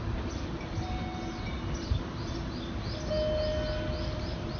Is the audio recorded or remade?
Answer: recorded